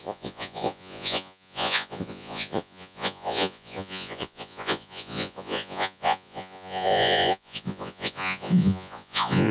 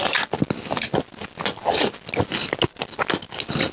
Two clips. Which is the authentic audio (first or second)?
second